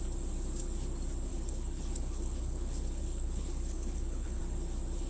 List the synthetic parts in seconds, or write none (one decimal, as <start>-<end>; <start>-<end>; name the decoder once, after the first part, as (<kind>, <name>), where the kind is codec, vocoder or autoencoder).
1.3-4.4 (codec, HILCodec)